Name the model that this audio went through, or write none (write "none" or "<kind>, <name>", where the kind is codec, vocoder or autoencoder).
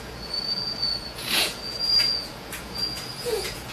vocoder, Vocos